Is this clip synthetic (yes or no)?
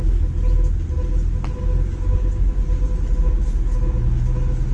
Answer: no